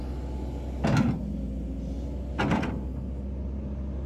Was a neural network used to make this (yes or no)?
no